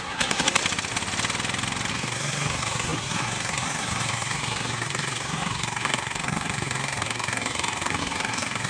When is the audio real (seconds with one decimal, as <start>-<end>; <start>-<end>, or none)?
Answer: 0.6-1.9

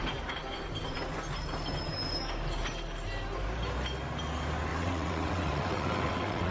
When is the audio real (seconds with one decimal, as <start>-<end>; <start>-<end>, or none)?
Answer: 0.0-4.7